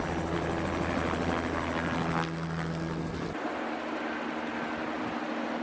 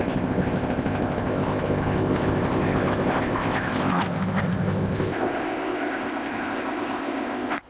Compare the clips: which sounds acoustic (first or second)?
first